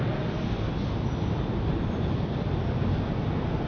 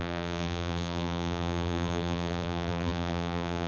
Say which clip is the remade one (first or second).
second